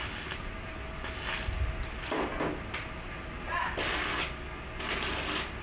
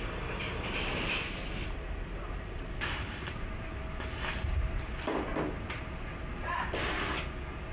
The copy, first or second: second